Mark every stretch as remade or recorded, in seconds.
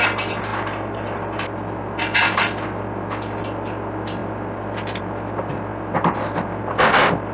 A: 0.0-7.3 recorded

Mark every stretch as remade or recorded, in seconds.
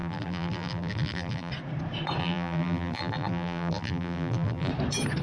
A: 0.0-1.5 remade; 1.5-2.2 recorded; 2.2-4.7 remade; 4.7-5.2 recorded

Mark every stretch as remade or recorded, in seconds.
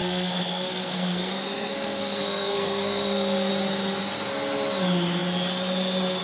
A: 0.0-3.5 remade; 3.5-6.2 recorded